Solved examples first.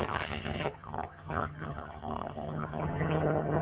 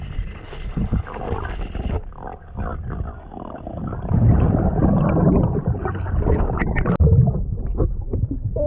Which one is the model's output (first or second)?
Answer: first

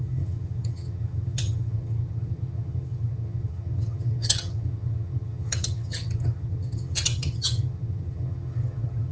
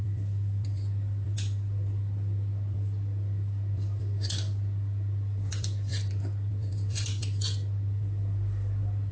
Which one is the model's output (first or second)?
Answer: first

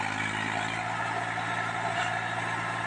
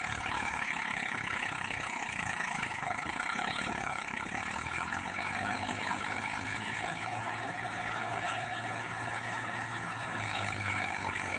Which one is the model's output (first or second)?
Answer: second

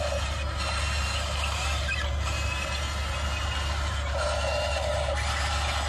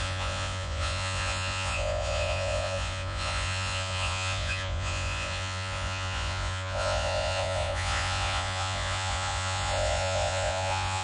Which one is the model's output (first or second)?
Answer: second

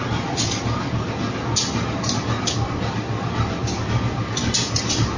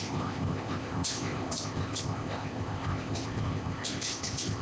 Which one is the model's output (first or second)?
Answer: second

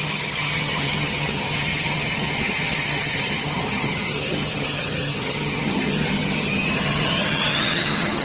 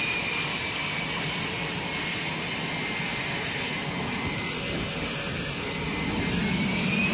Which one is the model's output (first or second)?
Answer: first